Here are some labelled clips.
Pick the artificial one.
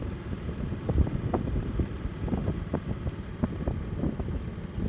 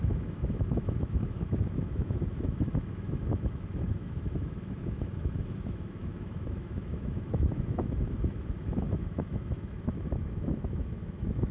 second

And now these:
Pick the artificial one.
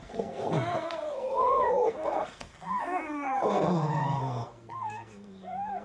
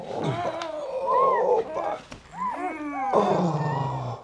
first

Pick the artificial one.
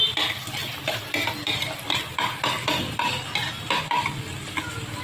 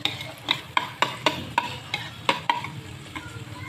second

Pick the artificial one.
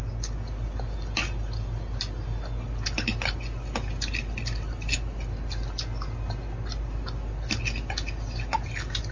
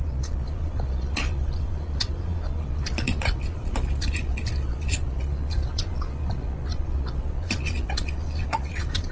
second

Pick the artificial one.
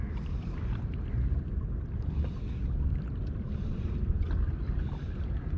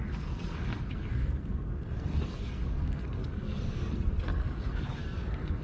second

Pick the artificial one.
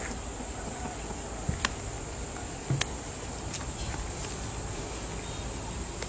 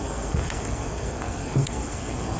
second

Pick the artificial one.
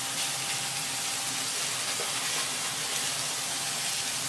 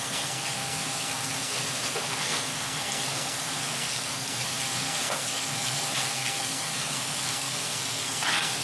second